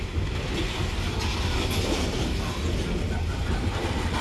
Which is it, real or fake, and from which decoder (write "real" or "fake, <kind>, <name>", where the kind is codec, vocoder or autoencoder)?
real